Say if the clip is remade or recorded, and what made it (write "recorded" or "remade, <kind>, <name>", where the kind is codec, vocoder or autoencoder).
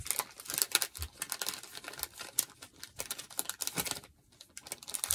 recorded